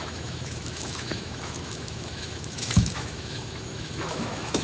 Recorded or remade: remade